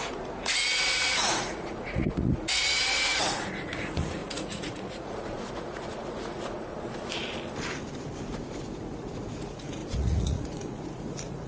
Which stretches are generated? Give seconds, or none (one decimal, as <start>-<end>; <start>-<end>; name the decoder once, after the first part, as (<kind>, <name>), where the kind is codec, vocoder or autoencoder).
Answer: 0.0-6.7 (vocoder, Vocos); 8.3-11.5